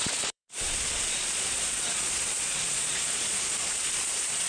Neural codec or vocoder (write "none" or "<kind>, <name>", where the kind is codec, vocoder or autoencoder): vocoder, Vocos